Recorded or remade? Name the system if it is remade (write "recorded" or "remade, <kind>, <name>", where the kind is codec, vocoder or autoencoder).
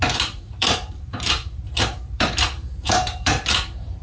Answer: remade, vocoder, BigVGAN v2